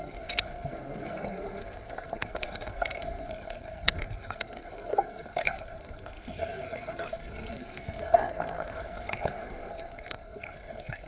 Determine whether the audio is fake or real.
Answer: fake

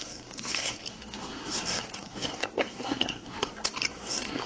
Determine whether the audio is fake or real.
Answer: fake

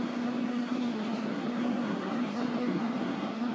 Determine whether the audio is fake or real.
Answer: fake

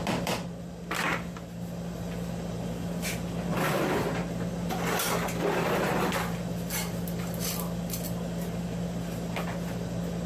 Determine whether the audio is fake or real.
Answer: real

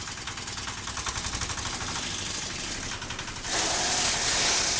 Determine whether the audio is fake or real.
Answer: real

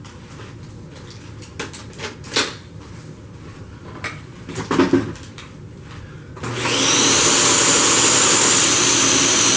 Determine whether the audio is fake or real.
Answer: real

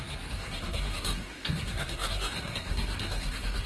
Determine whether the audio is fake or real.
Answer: fake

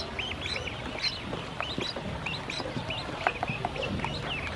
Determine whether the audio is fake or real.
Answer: real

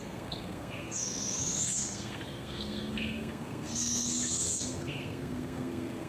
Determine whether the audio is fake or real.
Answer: fake